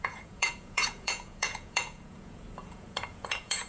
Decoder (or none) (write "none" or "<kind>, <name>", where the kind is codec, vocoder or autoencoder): vocoder, Vocos